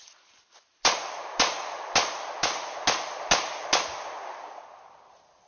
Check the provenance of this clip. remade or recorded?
recorded